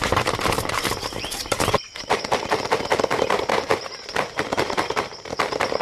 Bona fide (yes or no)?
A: no